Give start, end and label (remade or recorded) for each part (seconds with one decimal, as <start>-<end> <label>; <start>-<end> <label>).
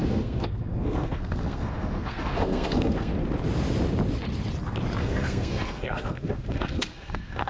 0.0-3.1 remade; 3.1-5.0 recorded; 5.0-7.5 remade